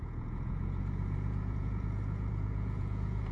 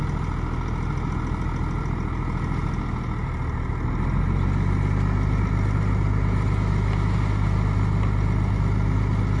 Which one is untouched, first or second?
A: second